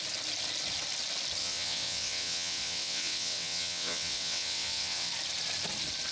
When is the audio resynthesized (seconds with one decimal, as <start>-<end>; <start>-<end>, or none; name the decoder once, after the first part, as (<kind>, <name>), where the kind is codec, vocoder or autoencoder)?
1.4-5.1 (vocoder, WaveNeXt)